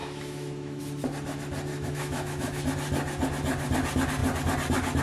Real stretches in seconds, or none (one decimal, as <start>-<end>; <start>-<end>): 0.8-1.7; 2.6-5.0